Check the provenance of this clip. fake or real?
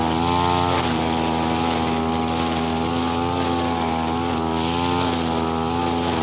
real